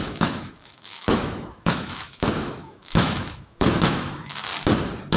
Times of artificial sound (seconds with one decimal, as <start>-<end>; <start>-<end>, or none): 0.0-4.5